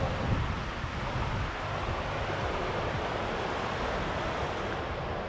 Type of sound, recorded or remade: recorded